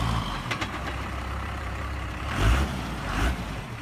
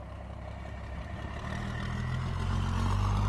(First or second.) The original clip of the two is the second